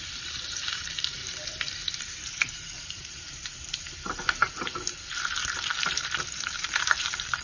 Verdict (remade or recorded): remade